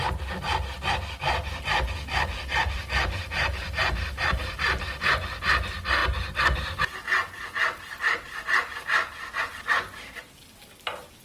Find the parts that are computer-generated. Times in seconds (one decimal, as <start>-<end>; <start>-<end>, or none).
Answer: 1.4-4.8